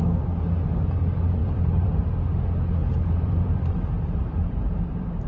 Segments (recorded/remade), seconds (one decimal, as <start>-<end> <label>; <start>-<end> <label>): 0.0-1.4 recorded; 1.4-1.9 remade; 1.9-2.8 recorded; 2.8-5.3 remade